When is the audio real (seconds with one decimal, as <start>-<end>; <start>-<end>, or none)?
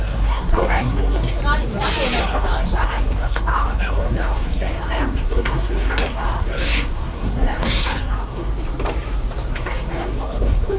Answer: 1.4-2.2; 8.5-9.5